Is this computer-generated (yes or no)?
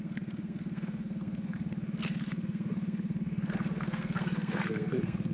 yes